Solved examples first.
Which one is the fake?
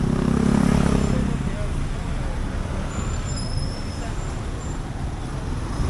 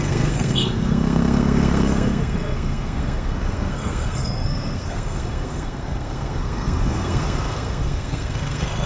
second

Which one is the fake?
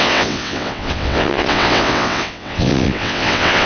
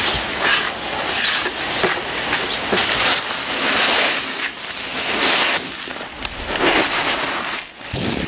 first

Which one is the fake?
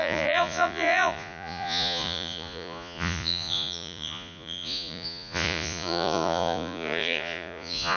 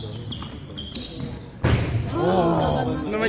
first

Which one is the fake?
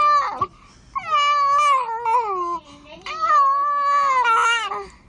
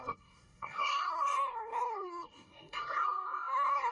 second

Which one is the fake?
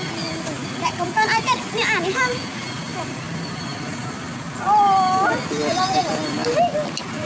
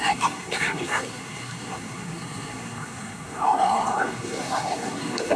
second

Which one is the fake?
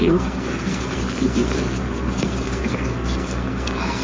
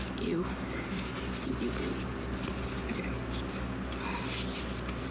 first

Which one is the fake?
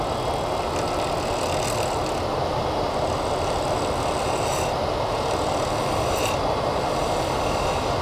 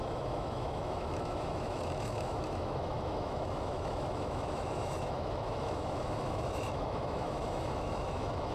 second